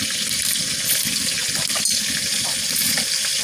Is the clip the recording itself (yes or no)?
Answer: yes